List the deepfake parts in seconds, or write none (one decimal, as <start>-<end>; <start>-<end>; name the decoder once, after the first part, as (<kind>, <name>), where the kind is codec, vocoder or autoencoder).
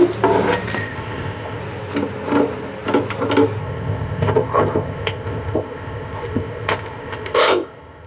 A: 0.8-1.6 (codec, ZipCodec); 3.6-8.1